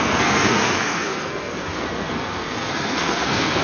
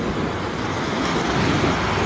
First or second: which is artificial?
first